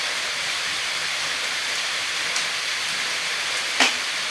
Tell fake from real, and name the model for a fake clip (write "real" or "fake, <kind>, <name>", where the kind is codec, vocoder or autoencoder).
fake, vocoder, BigVGAN v2